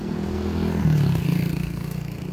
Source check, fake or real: fake